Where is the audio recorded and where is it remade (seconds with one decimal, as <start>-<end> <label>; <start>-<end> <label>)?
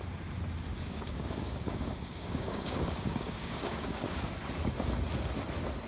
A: 0.0-0.7 recorded; 0.7-4.2 remade; 4.2-5.9 recorded